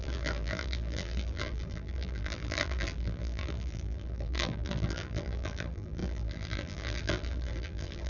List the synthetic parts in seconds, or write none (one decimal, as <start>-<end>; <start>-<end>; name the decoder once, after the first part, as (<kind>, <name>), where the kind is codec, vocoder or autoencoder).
0.0-8.1 (vocoder, BigVGAN v2)